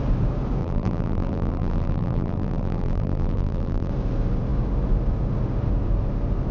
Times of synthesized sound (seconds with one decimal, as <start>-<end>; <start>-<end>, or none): 0.6-3.9